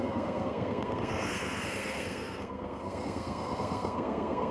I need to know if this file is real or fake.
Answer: fake